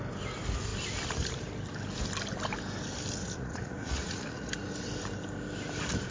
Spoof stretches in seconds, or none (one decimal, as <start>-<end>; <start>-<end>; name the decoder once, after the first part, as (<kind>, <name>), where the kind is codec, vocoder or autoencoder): 3.2-4.5 (vocoder, Vocos)